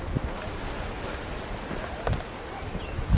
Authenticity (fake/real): real